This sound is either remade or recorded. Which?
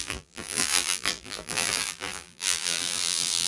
remade